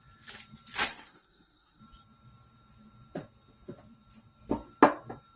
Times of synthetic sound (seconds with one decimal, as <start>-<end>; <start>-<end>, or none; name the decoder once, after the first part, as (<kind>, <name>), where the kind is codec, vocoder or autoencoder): 0.9-1.8 (codec, SNAC)